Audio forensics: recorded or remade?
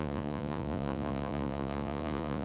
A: remade